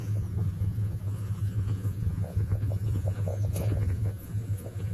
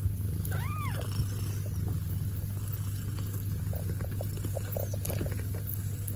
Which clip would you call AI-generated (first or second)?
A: first